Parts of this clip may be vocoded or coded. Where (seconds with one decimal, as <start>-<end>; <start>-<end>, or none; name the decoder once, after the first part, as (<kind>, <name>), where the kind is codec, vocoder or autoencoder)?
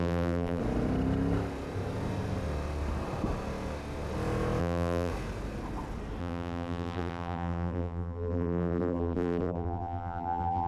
0.0-0.6 (vocoder, BigVGAN v2); 4.6-5.1; 6.2-10.7